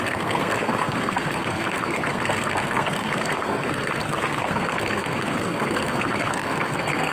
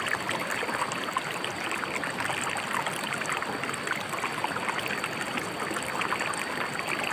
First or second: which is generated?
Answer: first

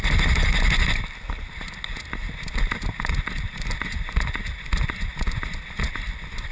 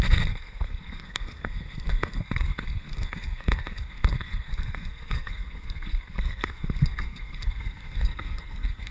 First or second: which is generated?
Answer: second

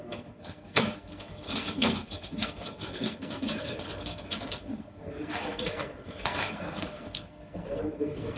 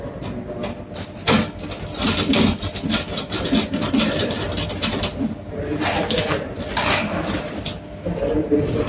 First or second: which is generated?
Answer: first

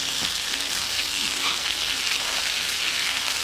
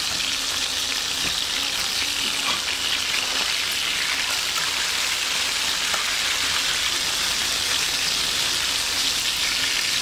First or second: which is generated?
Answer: first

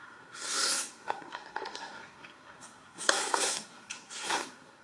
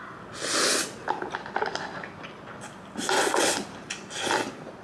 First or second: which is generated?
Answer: first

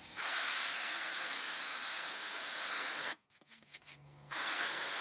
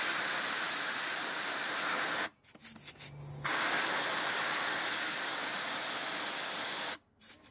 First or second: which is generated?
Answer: first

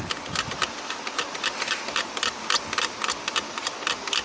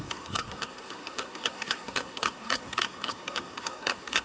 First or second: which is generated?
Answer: second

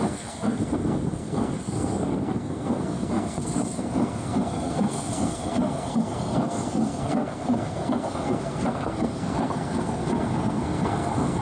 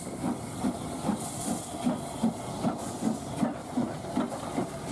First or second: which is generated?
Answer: first